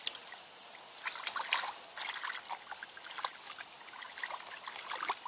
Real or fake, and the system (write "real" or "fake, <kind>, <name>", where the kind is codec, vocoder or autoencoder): real